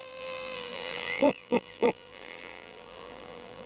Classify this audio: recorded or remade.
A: remade